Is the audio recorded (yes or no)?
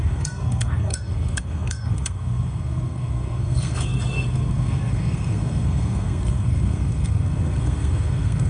no